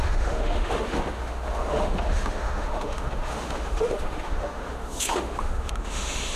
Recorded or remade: remade